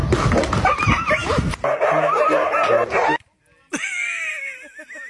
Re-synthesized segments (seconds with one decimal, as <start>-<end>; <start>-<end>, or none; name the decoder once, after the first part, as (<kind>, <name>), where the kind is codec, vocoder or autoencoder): none